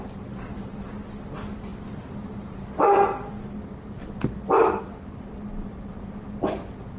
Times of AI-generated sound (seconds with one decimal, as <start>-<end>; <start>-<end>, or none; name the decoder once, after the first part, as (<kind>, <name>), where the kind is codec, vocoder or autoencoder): none